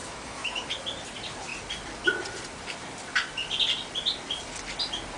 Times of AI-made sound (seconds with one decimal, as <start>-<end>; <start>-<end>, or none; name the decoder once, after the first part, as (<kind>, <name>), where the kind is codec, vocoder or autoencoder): 0.0-0.7 (autoencoder, DAC-VAE)